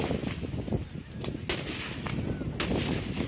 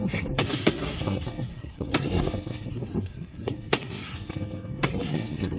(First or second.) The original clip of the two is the first